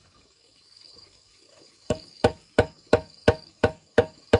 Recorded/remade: remade